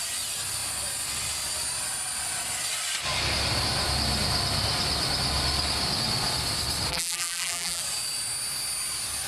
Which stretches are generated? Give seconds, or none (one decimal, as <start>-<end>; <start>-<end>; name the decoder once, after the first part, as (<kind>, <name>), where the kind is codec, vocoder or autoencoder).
6.9-7.8 (vocoder, BigVGAN v2)